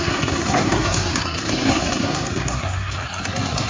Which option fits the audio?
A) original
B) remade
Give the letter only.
B